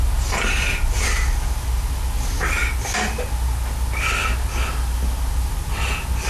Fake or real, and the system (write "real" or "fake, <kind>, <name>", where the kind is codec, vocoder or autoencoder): real